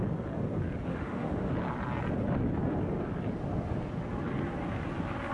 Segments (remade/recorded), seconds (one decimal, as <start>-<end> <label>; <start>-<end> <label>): 0.0-0.9 recorded; 0.9-1.5 remade; 1.5-5.3 recorded